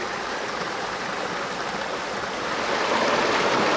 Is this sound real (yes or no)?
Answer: yes